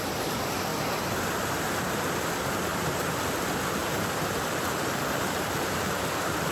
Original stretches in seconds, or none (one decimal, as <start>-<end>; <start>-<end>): 0.0-2.7; 3.2-3.8; 5.9-6.5